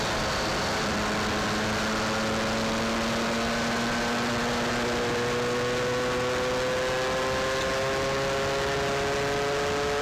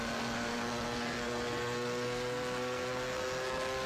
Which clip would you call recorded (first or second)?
first